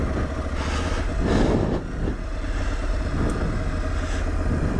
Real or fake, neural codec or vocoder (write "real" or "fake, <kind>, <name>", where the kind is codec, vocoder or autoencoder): real